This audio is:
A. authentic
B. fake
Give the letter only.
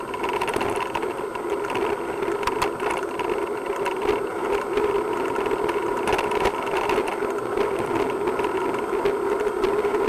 A